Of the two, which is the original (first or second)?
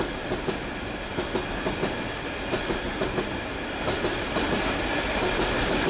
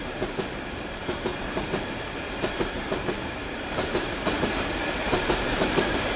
first